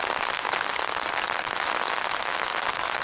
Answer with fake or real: real